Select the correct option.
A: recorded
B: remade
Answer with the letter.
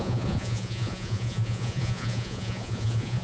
B